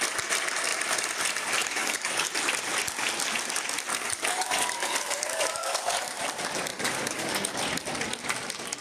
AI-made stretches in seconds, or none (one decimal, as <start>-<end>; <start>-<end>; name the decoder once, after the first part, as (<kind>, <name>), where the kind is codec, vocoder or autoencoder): 1.6-2.3 (codec, DAC); 3.9-6.2; 6.7-7.6